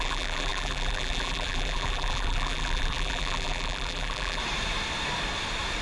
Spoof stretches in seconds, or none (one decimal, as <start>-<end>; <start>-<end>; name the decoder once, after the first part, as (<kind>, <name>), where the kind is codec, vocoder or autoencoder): 0.0-4.4 (vocoder, BigVGAN v2)